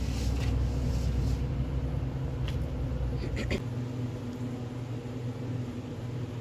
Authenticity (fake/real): real